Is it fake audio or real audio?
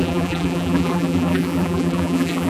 fake